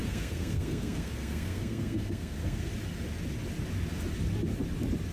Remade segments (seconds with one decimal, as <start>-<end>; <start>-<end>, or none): 0.0-2.7